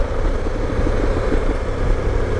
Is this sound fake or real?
fake